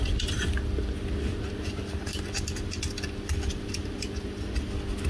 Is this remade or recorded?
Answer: recorded